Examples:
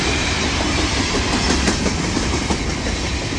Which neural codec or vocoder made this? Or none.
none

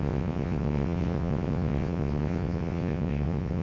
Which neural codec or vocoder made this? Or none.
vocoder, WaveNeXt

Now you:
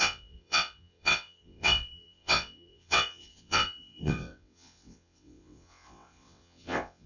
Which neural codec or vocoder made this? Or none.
vocoder, WaveNeXt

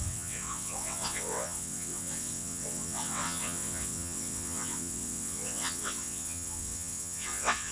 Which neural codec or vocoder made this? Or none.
vocoder, WaveNeXt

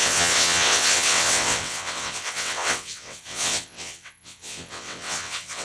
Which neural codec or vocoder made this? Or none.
vocoder, WaveNeXt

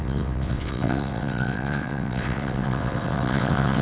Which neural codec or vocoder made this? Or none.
vocoder, WaveNeXt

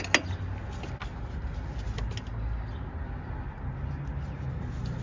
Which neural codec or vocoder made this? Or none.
none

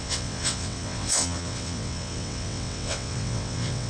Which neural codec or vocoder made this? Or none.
vocoder, WaveNeXt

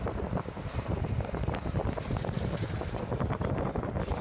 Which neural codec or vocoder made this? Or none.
none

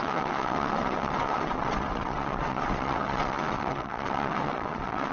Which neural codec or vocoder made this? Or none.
vocoder, WaveNeXt